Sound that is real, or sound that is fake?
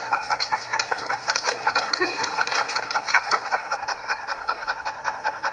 fake